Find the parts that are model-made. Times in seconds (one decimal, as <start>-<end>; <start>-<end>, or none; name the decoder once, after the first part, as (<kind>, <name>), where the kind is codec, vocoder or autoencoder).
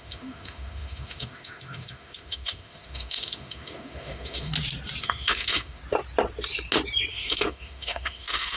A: 0.0-4.5 (autoencoder, DAC-VAE); 5.0-5.8; 7.1-8.6